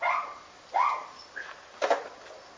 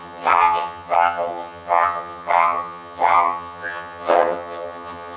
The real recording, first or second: first